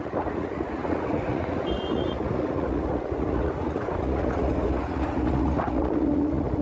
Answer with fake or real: fake